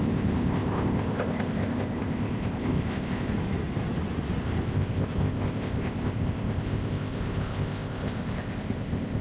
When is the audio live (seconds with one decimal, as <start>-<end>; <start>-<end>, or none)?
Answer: 3.3-4.4